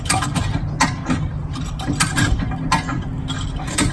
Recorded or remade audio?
recorded